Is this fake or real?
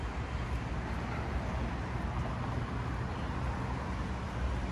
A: real